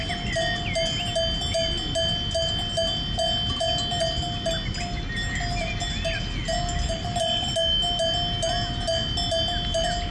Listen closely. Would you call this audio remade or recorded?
recorded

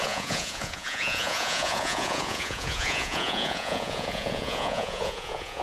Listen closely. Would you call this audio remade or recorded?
remade